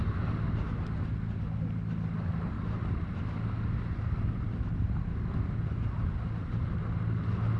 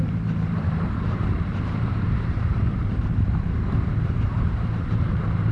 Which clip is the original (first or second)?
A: first